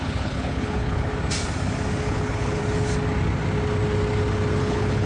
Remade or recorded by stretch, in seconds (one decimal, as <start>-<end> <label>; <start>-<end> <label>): 0.0-1.1 remade; 1.1-2.0 recorded; 2.0-2.6 remade; 2.6-4.6 recorded; 4.6-5.1 remade